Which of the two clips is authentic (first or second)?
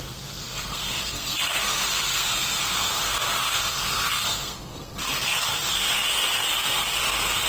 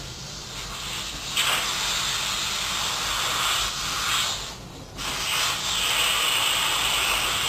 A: second